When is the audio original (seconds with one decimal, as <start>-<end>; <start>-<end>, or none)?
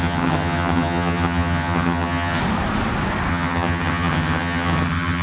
2.4-3.3